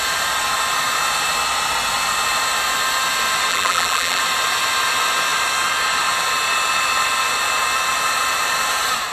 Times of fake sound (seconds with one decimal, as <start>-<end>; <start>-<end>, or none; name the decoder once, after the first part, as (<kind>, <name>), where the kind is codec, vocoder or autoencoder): 3.5-4.2 (vocoder, BigVGAN v2)